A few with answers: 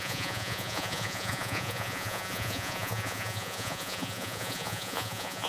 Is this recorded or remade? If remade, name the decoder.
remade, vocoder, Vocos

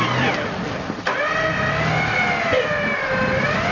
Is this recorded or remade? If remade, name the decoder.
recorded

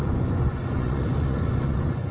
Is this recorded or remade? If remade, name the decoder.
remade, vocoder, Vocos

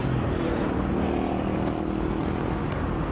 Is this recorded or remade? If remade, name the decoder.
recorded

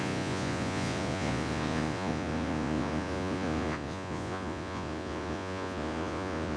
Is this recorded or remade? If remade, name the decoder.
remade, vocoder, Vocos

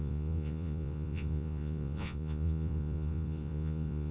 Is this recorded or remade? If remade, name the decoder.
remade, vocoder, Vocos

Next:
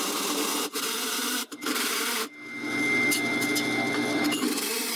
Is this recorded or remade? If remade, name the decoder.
recorded